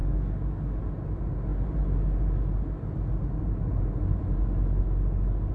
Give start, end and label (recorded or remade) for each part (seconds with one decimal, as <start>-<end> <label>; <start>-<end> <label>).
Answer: 0.0-0.8 remade; 0.8-5.5 recorded